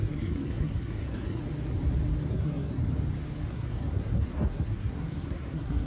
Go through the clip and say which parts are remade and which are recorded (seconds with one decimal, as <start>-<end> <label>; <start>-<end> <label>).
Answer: 0.0-1.4 remade; 1.4-2.3 recorded; 2.3-2.8 remade; 2.8-3.5 recorded; 3.5-5.9 remade